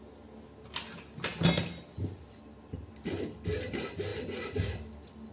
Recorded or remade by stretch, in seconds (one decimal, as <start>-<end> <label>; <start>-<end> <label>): 0.0-4.1 recorded; 4.1-5.3 remade